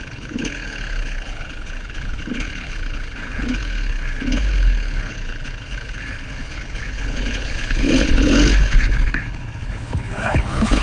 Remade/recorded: remade